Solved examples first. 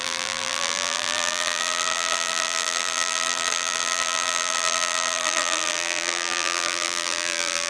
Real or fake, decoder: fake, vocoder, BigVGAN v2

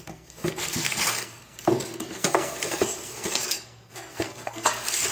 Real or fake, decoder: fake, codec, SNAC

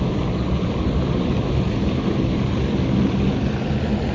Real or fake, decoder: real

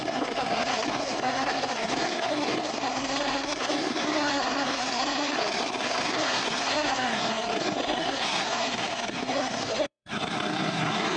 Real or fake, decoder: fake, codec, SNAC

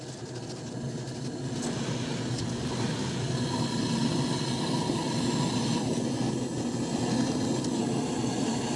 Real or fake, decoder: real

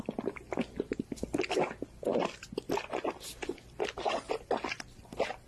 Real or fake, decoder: real